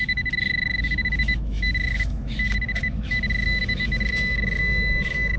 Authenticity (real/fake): fake